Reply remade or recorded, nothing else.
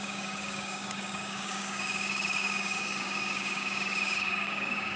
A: remade